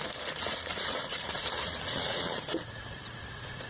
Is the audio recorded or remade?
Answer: remade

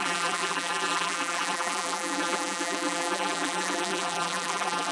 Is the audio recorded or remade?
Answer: remade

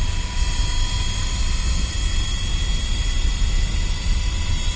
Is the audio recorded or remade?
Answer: recorded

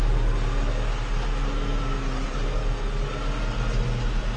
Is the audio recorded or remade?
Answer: recorded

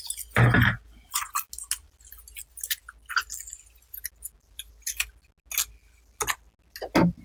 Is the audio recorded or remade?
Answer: recorded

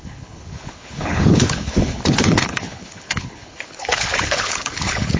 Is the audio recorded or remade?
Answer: remade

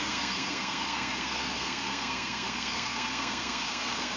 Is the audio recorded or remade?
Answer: remade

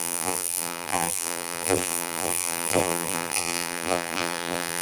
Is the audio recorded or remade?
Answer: remade